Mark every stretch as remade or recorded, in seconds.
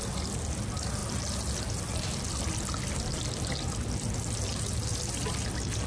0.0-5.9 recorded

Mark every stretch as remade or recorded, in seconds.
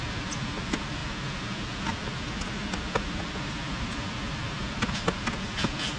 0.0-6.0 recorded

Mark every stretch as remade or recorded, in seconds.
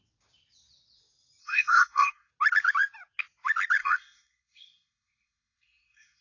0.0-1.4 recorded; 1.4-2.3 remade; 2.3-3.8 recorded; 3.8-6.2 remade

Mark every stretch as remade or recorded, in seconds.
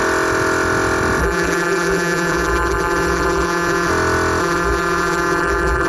0.0-1.2 recorded; 1.2-3.9 remade; 3.9-4.4 recorded; 4.4-5.9 remade